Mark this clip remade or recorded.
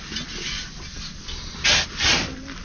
recorded